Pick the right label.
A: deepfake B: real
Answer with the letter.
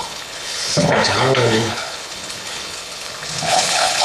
A